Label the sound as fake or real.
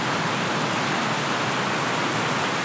real